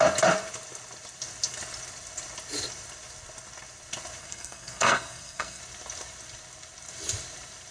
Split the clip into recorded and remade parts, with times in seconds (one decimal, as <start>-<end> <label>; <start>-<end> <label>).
0.0-4.2 recorded; 4.2-5.6 remade; 5.6-7.7 recorded